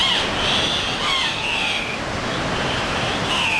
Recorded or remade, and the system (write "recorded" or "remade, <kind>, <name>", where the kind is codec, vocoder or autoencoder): recorded